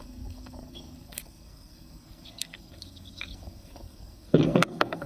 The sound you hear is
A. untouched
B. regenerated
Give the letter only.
B